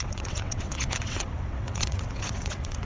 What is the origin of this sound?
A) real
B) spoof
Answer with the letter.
B